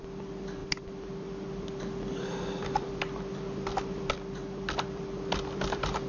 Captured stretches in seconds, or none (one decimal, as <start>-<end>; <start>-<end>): 0.0-6.1